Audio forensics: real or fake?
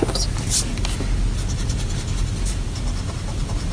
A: real